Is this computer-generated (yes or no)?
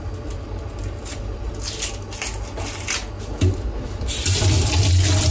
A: no